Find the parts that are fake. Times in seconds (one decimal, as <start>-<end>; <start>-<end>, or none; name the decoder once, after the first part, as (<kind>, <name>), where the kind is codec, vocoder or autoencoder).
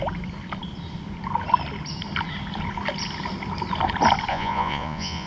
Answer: 4.3-5.3 (vocoder, Vocos)